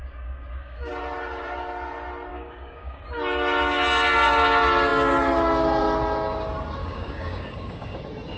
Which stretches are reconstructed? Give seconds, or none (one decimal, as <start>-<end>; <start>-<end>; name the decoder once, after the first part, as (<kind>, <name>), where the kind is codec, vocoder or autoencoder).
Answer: 0.0-0.9 (codec, DAC); 2.3-3.0; 6.8-8.0